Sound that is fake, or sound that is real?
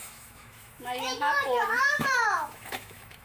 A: fake